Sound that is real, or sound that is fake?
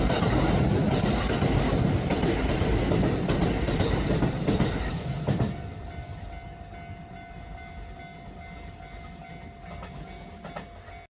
real